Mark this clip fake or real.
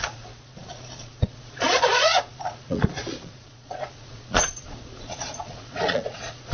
fake